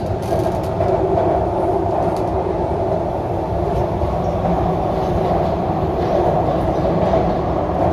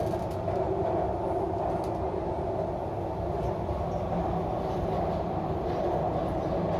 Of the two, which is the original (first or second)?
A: second